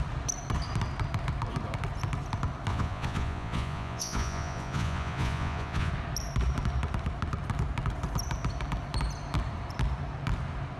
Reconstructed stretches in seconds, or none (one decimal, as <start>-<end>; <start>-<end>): 2.7-5.9